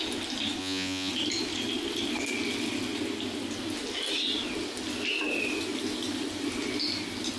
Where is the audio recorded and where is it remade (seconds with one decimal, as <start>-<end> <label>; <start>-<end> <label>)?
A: 0.0-0.6 recorded; 0.6-1.1 remade; 1.1-7.4 recorded